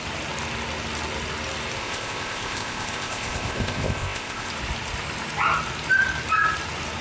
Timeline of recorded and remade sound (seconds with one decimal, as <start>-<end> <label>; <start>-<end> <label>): 0.0-1.8 recorded; 1.8-4.5 remade; 4.5-7.0 recorded